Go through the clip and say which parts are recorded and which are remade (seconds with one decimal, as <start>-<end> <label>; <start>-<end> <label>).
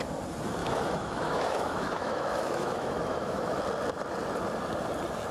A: 0.0-0.6 recorded; 0.6-3.6 remade; 3.6-5.3 recorded